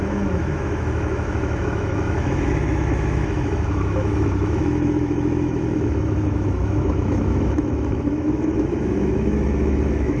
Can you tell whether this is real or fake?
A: fake